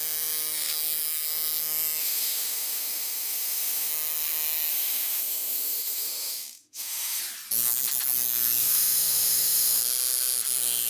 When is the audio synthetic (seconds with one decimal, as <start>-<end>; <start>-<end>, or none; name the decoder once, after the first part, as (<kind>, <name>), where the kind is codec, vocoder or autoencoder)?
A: 2.0-3.9 (autoencoder, DAC-VAE); 4.7-7.2; 8.6-9.8

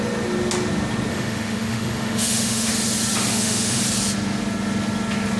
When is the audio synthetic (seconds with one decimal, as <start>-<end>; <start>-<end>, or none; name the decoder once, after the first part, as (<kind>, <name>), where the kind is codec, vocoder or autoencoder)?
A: 1.1-2.7 (autoencoder, DAC-VAE); 3.3-3.8